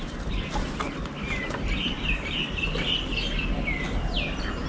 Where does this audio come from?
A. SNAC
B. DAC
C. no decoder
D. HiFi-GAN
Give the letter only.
C